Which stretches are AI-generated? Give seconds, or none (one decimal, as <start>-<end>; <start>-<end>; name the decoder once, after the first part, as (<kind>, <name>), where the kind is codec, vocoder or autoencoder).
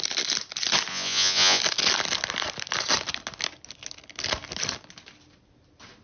0.9-1.6 (vocoder, Vocos)